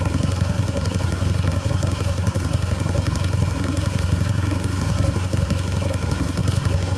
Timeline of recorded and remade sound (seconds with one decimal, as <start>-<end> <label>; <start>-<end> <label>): 0.0-7.0 remade